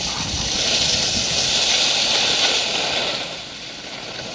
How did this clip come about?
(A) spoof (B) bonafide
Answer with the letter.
B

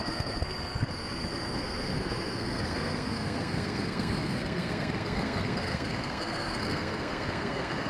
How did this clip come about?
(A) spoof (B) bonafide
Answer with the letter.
A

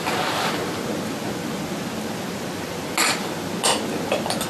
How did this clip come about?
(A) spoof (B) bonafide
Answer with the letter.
B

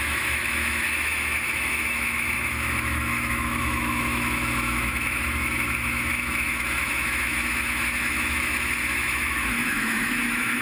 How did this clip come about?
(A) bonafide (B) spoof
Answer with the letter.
B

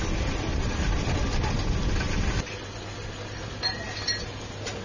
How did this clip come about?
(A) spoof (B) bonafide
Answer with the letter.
B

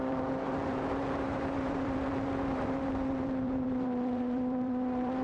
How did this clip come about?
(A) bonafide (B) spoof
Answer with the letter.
B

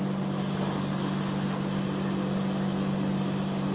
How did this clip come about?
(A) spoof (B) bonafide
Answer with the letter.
B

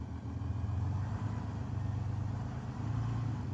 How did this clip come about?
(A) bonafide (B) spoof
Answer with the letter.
A